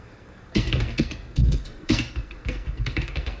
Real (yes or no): no